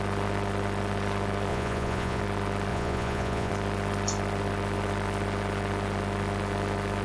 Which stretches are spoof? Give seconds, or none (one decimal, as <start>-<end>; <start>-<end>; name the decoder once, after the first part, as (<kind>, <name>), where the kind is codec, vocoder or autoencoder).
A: 1.5-2.2 (vocoder, Vocos); 2.7-3.5

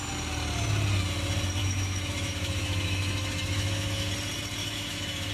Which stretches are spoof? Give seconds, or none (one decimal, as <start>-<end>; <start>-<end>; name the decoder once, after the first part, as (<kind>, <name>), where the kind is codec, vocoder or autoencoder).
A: 1.6-4.1 (autoencoder, DAC-VAE); 4.6-5.3

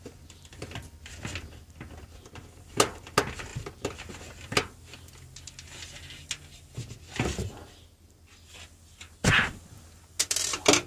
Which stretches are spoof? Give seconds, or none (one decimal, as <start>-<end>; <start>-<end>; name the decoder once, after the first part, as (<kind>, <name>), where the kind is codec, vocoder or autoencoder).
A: 3.5-4.1 (vocoder, BigVGAN v2)

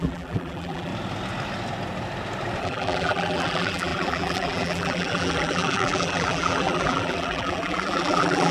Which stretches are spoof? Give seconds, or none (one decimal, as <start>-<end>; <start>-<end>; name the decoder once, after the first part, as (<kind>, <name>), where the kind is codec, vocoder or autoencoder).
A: 0.0-0.9 (vocoder, BigVGAN v2); 2.6-8.5

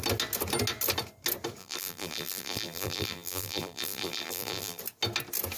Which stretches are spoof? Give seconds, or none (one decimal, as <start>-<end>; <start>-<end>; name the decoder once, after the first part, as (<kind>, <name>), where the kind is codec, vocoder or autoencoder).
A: 1.6-4.8 (vocoder, BigVGAN v2)

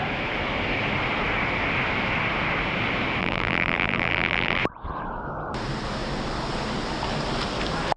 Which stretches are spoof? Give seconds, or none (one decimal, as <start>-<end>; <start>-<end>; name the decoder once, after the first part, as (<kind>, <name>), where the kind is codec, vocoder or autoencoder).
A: 3.2-4.6 (vocoder, BigVGAN v2)

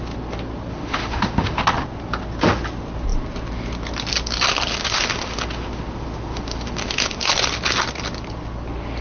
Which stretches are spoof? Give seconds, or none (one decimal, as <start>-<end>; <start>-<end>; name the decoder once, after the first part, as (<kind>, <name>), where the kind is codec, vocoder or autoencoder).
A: 0.7-1.6 (autoencoder, DAC-VAE); 4.7-7.3